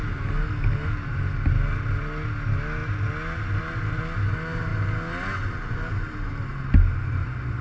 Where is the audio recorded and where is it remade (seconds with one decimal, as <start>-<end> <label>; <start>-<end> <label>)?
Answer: 0.0-7.6 recorded